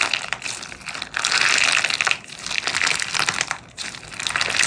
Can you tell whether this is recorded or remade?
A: recorded